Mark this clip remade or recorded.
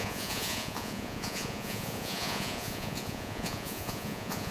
remade